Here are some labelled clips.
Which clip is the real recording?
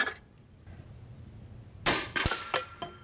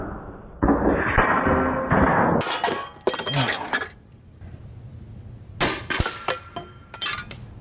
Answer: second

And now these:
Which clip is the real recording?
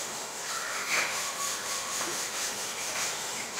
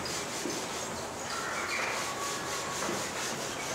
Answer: second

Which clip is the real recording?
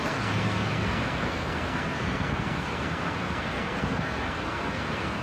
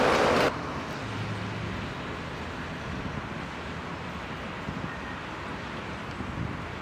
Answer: second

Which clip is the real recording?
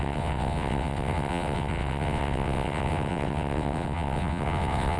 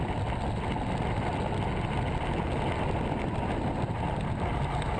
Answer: second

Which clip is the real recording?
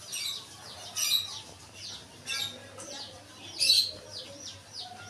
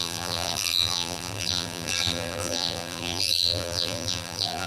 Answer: first